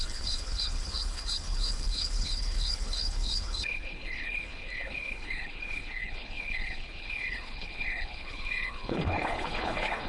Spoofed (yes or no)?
yes